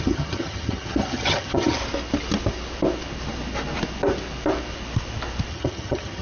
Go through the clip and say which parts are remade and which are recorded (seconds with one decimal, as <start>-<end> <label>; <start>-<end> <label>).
0.0-1.8 remade; 1.8-5.5 recorded; 5.5-6.2 remade